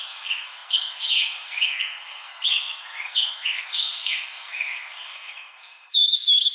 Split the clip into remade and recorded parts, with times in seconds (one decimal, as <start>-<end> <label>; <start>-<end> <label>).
0.0-6.5 remade